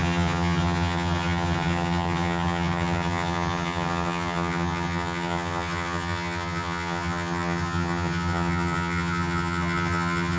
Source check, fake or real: fake